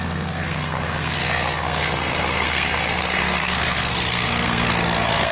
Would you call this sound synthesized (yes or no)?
yes